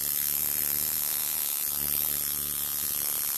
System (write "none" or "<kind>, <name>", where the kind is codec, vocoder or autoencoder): none